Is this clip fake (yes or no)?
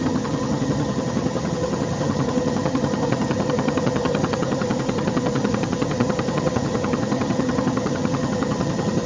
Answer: yes